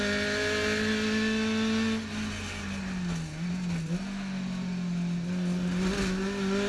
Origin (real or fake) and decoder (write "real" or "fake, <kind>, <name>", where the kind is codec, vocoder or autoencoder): real